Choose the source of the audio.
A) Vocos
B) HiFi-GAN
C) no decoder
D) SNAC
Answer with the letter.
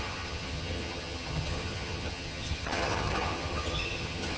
B